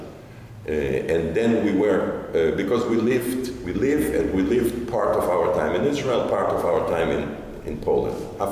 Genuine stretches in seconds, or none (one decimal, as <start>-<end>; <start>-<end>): 0.0-2.8; 5.2-6.0; 7.0-8.5